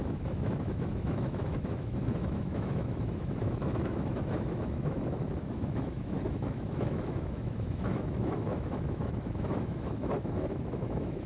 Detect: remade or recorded remade